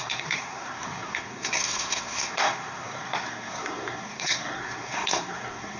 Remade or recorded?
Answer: remade